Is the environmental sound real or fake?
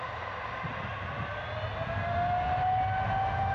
real